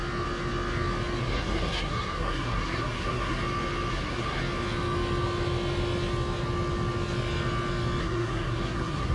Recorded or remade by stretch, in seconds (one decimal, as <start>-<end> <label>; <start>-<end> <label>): 0.0-1.2 recorded; 1.2-3.4 remade; 3.4-3.9 recorded; 3.9-4.4 remade; 4.4-8.0 recorded; 8.0-9.1 remade